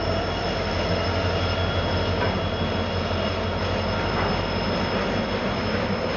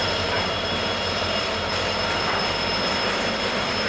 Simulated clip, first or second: second